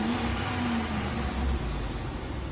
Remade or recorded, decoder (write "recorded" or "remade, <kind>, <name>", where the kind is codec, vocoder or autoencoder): remade, vocoder, BigVGAN v2